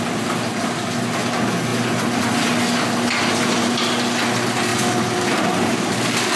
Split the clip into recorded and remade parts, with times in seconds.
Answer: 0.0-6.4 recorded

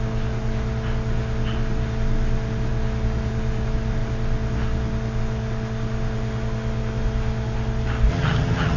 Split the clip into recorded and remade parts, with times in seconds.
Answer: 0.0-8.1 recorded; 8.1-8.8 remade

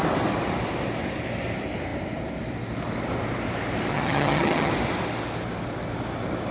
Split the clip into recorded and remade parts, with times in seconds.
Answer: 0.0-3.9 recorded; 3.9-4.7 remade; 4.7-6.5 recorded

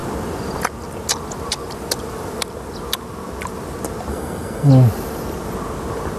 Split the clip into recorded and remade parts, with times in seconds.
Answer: 0.0-4.1 recorded; 4.1-4.7 remade; 4.7-6.2 recorded

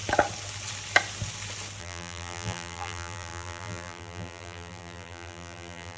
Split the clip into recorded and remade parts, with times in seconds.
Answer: 0.0-1.8 recorded; 1.8-6.0 remade

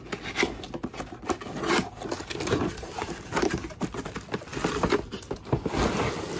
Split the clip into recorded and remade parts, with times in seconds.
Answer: 0.0-6.4 recorded